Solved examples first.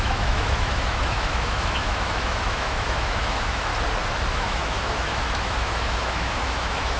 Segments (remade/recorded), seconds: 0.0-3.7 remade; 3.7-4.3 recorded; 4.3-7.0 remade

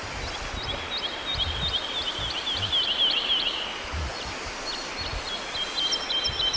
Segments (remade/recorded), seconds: 0.0-1.3 recorded; 1.3-2.1 remade; 2.1-6.6 recorded

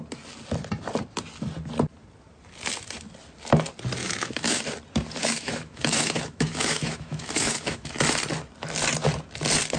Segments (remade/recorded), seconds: 0.0-4.0 recorded; 4.0-4.6 remade; 4.6-5.2 recorded; 5.2-7.9 remade; 7.9-9.8 recorded

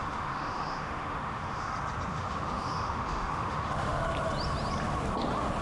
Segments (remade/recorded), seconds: 0.0-1.7 remade; 1.7-2.1 recorded; 2.1-4.0 remade; 4.0-5.6 recorded

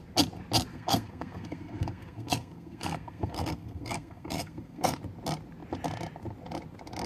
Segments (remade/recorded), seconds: 0.0-0.7 recorded; 0.7-5.0 remade; 5.0-7.1 recorded

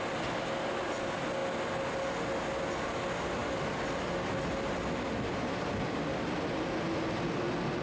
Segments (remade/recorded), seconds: 0.0-7.8 recorded